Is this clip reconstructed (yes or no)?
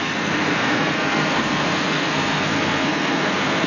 yes